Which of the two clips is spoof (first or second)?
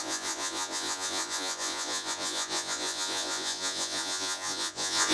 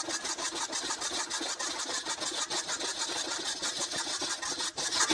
first